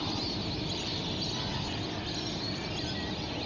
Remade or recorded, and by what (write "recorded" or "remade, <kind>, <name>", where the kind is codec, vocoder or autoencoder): recorded